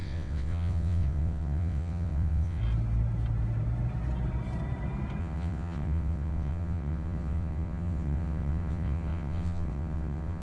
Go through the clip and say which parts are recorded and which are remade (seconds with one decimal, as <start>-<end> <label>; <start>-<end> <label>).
0.0-2.6 remade; 2.6-5.2 recorded; 5.2-10.4 remade